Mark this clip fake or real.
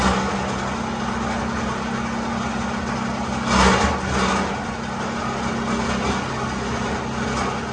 real